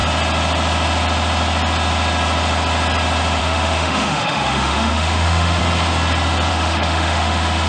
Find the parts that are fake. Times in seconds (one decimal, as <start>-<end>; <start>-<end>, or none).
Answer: 3.4-5.6; 6.5-7.7